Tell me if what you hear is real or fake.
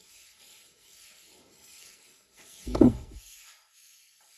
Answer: fake